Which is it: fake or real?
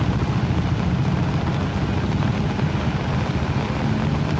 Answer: real